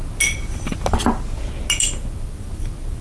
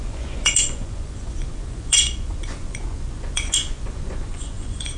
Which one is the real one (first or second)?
first